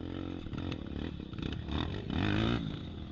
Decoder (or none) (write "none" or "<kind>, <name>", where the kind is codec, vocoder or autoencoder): none